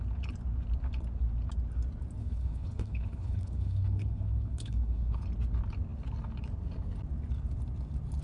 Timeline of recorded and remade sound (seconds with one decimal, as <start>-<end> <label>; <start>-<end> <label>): 0.0-2.2 recorded; 2.2-5.2 remade; 5.2-8.2 recorded